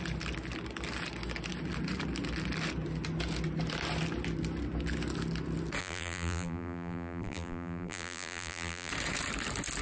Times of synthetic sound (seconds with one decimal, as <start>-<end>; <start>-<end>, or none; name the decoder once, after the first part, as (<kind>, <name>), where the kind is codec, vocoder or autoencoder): 5.8-8.9 (vocoder, BigVGAN v2)

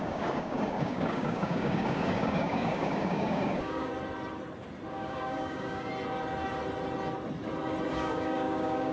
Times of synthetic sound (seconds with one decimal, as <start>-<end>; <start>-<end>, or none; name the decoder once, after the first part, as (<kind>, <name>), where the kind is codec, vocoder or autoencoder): 0.0-3.9 (codec, DAC); 4.9-5.9; 7.9-8.9